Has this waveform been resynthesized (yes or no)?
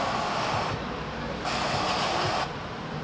no